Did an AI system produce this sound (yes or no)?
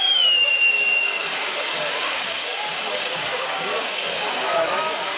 yes